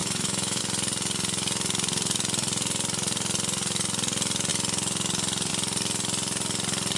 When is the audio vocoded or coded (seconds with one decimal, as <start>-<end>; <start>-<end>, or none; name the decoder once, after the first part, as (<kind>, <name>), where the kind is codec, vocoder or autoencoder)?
0.0-0.6 (autoencoder, DAC-VAE)